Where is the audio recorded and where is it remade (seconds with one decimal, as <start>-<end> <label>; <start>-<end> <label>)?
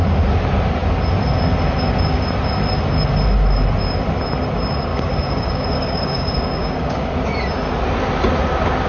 0.0-4.9 recorded; 4.9-7.1 remade; 7.1-8.9 recorded